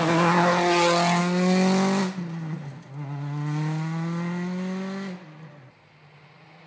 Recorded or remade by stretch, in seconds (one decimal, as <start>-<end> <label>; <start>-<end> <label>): 0.0-6.7 recorded